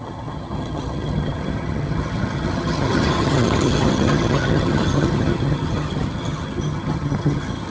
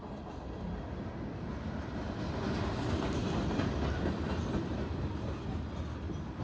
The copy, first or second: first